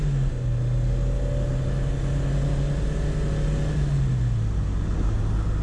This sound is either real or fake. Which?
real